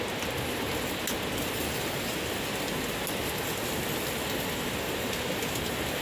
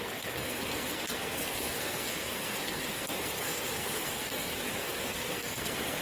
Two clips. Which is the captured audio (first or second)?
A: first